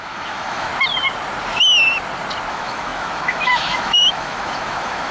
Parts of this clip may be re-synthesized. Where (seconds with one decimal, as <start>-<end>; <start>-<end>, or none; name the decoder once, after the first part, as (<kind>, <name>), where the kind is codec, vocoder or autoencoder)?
0.0-0.7 (autoencoder, DAC-VAE); 2.5-5.1